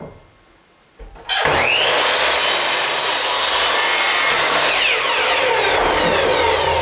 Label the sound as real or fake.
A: real